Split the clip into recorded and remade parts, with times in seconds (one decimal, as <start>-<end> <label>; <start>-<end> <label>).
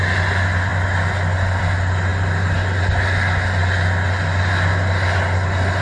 0.0-5.8 recorded